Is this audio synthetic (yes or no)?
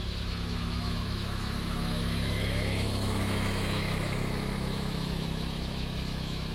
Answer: yes